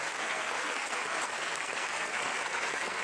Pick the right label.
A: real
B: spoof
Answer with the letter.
B